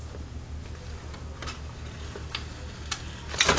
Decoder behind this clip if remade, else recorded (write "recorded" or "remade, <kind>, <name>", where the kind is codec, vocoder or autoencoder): recorded